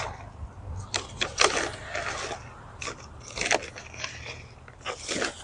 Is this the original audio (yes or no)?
yes